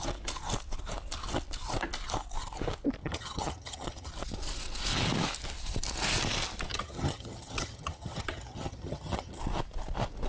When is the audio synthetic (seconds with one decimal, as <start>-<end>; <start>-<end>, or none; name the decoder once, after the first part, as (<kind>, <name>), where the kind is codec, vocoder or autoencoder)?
3.0-4.1 (vocoder, HiFi-GAN); 6.7-9.4